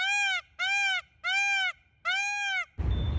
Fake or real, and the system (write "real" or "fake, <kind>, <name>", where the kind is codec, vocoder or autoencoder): real